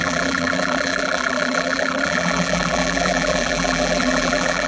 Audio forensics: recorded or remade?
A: remade